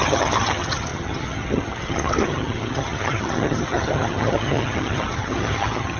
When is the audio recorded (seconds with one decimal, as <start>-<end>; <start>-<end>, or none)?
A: none